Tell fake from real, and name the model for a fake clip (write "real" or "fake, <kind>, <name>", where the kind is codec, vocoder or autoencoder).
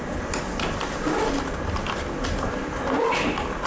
real